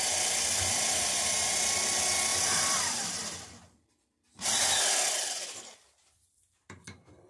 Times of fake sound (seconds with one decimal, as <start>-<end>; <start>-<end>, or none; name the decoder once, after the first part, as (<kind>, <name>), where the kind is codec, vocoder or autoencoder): 2.3-6.4 (vocoder, BigVGAN v2)